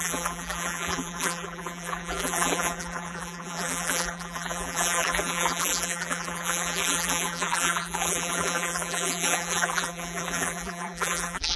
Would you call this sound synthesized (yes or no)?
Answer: yes